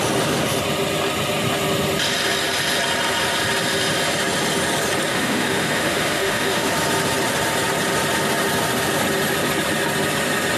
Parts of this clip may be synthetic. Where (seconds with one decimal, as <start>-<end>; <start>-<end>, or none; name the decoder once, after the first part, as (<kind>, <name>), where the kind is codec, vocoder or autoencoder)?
5.1-6.7 (autoencoder, DAC-VAE)